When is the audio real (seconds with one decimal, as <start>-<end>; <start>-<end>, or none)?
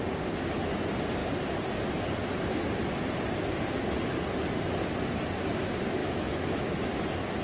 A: 0.0-6.0; 6.8-7.4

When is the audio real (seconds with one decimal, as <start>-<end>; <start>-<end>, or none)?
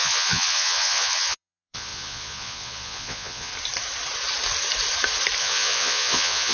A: 3.5-5.4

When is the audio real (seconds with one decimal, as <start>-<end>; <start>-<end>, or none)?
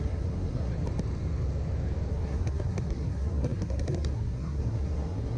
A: 0.7-2.1